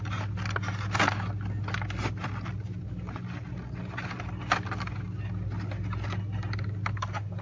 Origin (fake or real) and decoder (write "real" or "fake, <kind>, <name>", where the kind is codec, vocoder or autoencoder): real